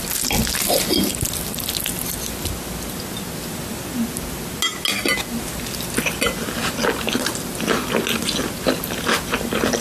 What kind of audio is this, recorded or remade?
recorded